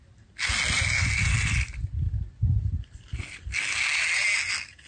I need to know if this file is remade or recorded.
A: recorded